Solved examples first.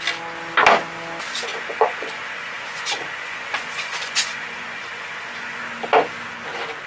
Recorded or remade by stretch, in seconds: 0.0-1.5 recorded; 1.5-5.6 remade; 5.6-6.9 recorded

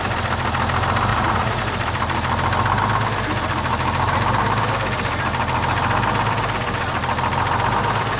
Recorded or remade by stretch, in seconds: 0.0-1.1 recorded; 1.1-1.6 remade; 1.6-8.2 recorded

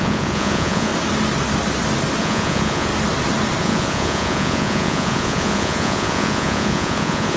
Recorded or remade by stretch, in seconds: 0.0-0.9 remade; 0.9-2.2 recorded; 2.2-2.9 remade; 2.9-3.6 recorded; 3.6-7.4 remade

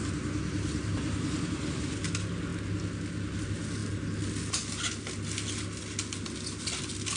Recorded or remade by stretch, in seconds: 0.0-7.2 recorded

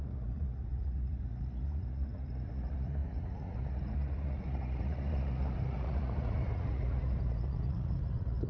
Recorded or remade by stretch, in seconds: 0.0-8.5 remade

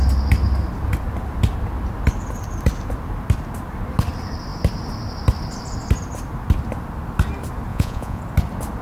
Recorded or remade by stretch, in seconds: 0.0-7.7 recorded; 7.7-8.2 remade; 8.2-8.8 recorded